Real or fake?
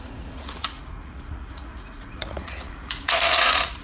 fake